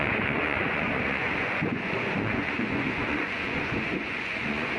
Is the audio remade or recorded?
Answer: remade